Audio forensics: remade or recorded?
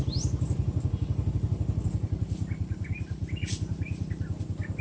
recorded